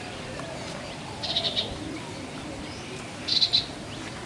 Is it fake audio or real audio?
real